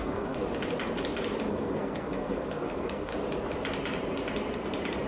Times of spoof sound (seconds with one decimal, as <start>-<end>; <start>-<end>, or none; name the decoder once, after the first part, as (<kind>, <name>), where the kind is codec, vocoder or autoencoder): 0.0-0.4 (codec, SNAC); 1.5-3.1